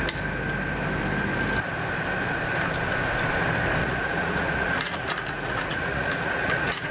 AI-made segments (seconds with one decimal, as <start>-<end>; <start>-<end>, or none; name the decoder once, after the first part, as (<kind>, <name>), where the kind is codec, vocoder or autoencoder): 3.8-6.9 (vocoder, Vocos)